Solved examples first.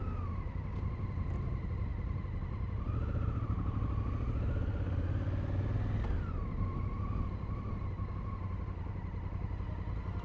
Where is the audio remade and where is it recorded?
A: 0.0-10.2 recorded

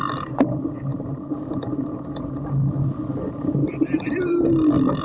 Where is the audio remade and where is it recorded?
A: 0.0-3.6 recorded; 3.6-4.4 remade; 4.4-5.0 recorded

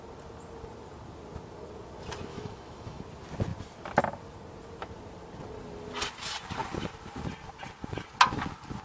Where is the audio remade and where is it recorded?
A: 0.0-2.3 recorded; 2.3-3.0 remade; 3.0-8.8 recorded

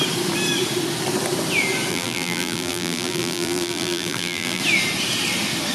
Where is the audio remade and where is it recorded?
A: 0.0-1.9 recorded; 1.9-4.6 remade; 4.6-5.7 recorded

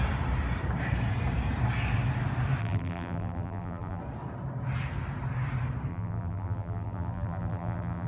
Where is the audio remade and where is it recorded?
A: 0.0-2.6 recorded; 2.6-4.0 remade; 4.0-5.9 recorded; 5.9-8.1 remade

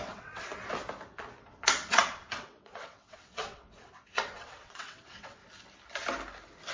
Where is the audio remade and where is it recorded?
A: 0.0-0.5 remade; 0.5-1.4 recorded; 1.4-5.4 remade; 5.4-6.7 recorded

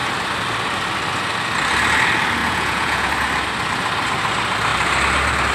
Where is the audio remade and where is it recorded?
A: 0.0-2.4 recorded; 2.4-3.1 remade; 3.1-5.5 recorded

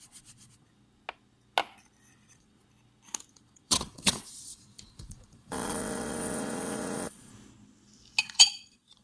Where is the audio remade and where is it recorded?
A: 0.0-0.7 remade; 0.7-2.1 recorded; 2.1-2.6 remade; 2.6-3.3 recorded; 3.3-7.3 remade; 7.3-8.2 recorded; 8.2-9.0 remade